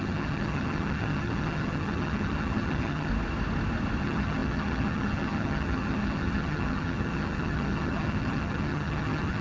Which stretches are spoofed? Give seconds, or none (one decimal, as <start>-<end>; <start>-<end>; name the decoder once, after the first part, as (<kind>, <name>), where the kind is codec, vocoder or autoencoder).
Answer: 0.0-3.1 (vocoder, HiFi-GAN); 4.0-9.4